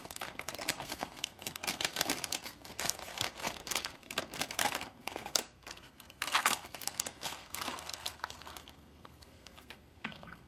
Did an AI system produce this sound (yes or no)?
yes